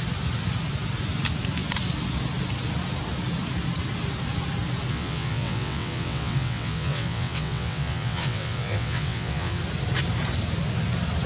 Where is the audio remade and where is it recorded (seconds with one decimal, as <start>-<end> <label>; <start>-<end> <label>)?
0.0-4.9 recorded; 4.9-9.6 remade; 9.6-11.3 recorded